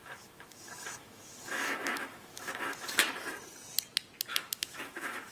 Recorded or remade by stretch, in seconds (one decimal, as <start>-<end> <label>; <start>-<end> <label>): 0.0-3.1 remade; 3.1-4.3 recorded; 4.3-5.3 remade